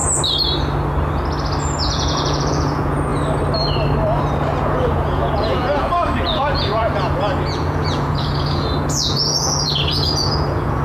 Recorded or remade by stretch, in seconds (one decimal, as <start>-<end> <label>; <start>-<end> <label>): 0.0-1.8 recorded; 1.8-3.1 remade; 3.1-4.6 recorded; 4.6-10.8 remade